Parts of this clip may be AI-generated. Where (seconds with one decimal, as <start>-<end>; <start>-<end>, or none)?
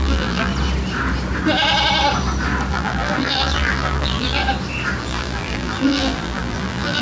0.0-0.5; 2.7-4.4; 5.0-7.0